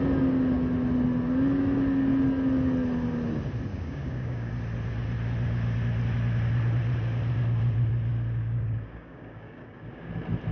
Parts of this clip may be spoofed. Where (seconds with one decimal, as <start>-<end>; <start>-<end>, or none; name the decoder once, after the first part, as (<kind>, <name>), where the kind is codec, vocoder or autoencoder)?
3.7-4.5 (codec, DAC); 8.4-10.1